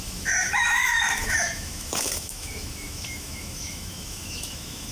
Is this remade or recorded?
remade